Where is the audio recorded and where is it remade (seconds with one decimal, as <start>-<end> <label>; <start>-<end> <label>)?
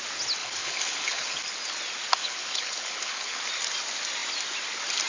0.0-0.4 recorded; 0.4-1.4 remade; 1.4-2.2 recorded; 2.2-3.4 remade; 3.4-5.1 recorded